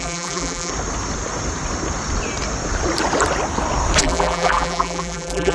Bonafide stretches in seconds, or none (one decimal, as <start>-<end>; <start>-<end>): 0.7-4.0